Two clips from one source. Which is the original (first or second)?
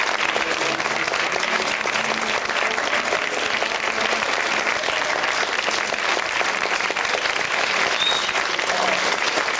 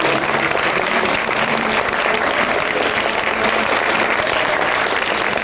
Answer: first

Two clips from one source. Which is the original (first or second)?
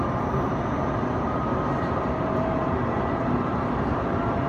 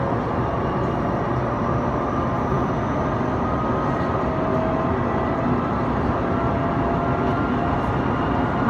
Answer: second